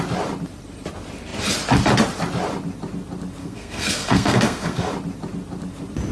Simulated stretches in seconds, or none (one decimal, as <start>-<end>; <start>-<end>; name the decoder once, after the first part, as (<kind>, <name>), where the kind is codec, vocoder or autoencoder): 3.4-4.9 (codec, SNAC)